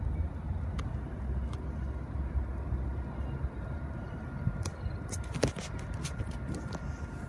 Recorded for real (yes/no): yes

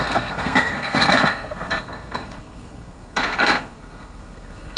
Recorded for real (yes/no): no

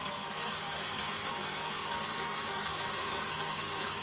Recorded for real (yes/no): no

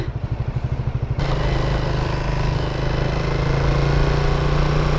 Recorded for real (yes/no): yes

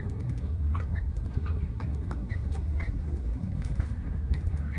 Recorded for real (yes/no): no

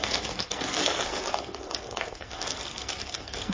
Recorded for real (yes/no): no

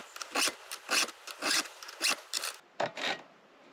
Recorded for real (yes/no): yes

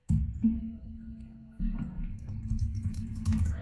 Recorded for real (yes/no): no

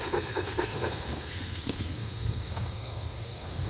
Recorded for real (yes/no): no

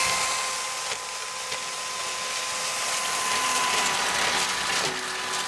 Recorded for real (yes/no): yes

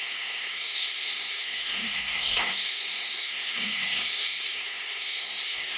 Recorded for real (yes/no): no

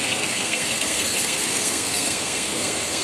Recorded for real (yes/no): no